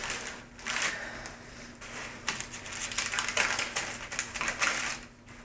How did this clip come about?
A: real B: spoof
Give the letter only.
A